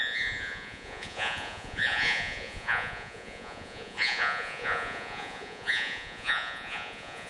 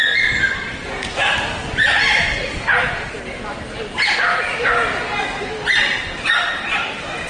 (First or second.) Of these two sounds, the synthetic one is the first